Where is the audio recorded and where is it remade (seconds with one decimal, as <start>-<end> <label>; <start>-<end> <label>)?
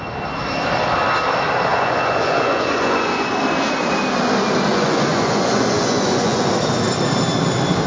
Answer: 0.0-1.7 recorded; 1.7-3.3 remade; 3.3-4.7 recorded; 4.7-6.5 remade; 6.5-7.9 recorded